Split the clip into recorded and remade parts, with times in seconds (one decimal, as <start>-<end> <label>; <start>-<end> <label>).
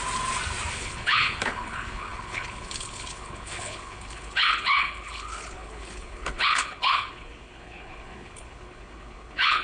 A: 0.0-0.7 recorded; 0.7-9.6 remade